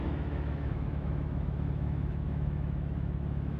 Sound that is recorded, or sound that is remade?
remade